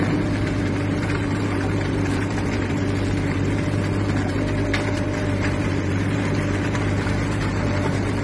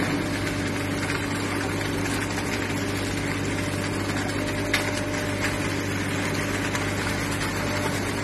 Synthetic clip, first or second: first